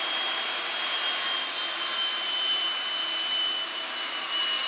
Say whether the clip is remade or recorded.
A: remade